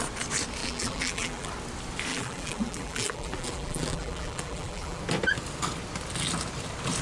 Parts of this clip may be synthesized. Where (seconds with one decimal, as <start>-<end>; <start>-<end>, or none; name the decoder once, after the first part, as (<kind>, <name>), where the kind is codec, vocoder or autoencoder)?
0.6-1.5 (vocoder, BigVGAN v2); 2.1-5.0